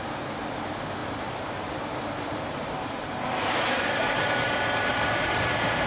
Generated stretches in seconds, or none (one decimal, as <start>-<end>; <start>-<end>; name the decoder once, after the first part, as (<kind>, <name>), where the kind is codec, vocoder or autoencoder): 1.0-4.5 (vocoder, BigVGAN v2); 4.9-5.9